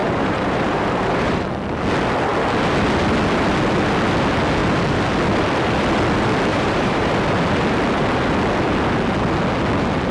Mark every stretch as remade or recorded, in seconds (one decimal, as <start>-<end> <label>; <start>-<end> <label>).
0.0-1.5 remade; 1.5-6.5 recorded; 6.5-7.1 remade; 7.1-10.1 recorded